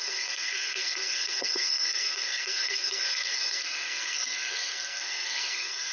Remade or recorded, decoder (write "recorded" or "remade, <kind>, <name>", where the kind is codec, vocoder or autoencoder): remade, codec, SNAC